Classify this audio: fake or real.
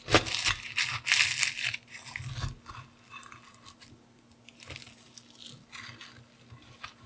real